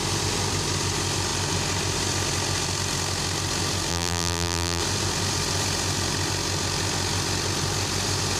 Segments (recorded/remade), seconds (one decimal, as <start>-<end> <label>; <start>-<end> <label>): 0.0-3.9 recorded; 3.9-4.8 remade; 4.8-8.4 recorded